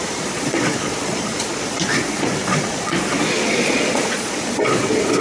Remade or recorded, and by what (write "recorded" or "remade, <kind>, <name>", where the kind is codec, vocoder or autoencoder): remade, vocoder, Vocos